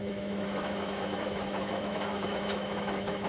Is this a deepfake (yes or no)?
yes